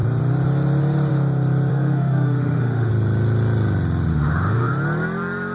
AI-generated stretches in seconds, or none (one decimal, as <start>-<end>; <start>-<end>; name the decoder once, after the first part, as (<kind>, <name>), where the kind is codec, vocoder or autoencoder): 1.7-2.9 (autoencoder, DAC-VAE); 4.1-4.7